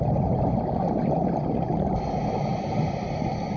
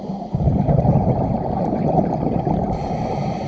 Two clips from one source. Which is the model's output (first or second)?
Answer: second